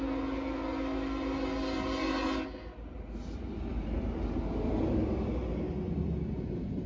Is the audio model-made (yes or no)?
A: no